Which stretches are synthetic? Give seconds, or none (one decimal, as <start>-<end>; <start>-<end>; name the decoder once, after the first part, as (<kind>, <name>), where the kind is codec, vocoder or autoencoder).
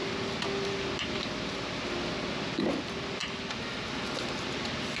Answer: none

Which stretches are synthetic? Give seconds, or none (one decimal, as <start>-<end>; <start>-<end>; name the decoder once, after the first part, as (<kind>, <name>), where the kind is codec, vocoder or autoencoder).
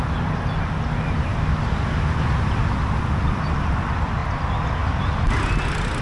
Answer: none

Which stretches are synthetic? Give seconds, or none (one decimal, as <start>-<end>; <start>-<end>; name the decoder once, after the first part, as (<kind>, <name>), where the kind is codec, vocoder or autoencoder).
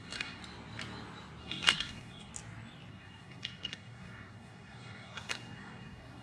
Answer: 0.0-0.4 (codec, SNAC); 1.4-2.3; 2.9-6.2